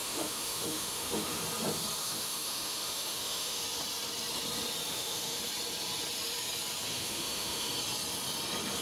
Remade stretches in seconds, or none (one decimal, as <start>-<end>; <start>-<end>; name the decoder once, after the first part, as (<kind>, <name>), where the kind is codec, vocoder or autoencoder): 0.0-1.4 (autoencoder, DAC-VAE); 2.0-3.6; 4.9-5.4; 6.9-7.7